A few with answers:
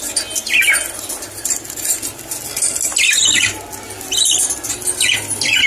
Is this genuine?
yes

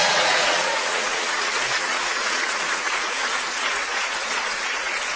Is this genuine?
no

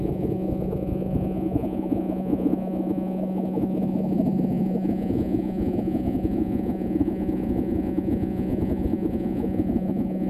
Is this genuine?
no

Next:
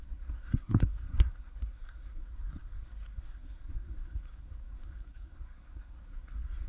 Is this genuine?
no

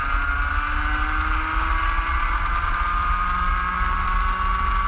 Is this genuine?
yes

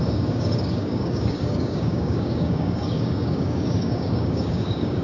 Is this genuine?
no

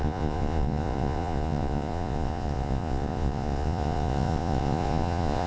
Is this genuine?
no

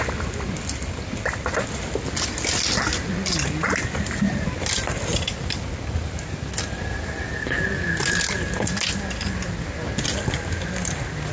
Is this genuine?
yes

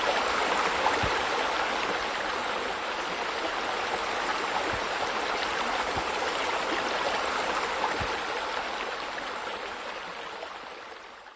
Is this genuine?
yes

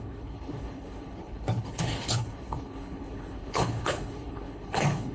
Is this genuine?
no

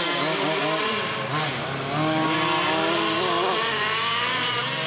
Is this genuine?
yes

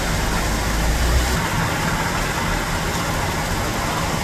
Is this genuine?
yes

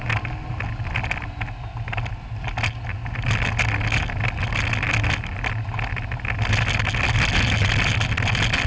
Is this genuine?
yes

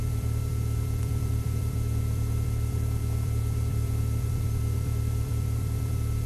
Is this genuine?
no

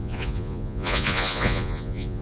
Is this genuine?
no